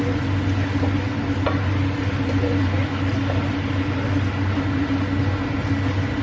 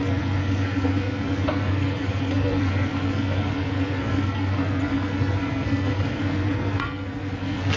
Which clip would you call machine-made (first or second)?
second